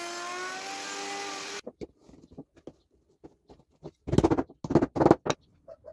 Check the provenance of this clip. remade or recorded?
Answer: recorded